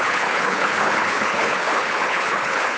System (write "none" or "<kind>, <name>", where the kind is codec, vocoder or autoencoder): codec, HILCodec